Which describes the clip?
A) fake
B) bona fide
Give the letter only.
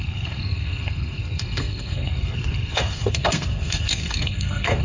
A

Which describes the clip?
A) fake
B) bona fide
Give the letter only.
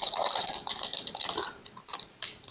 A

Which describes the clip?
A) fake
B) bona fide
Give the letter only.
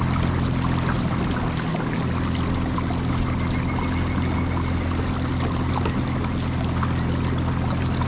B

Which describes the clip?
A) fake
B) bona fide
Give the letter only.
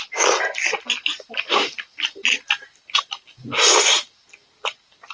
B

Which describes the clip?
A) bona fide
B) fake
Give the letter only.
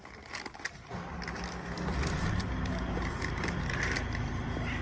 B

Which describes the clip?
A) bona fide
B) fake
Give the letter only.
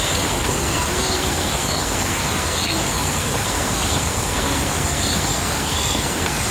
B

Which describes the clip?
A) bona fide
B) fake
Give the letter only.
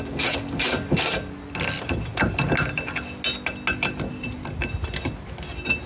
A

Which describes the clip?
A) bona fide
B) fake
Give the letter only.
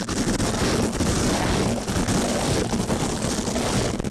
A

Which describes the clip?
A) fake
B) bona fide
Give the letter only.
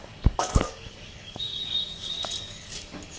A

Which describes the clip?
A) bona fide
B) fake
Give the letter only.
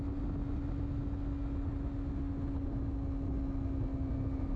A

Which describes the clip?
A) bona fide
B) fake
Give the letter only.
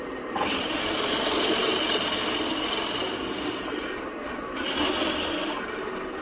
A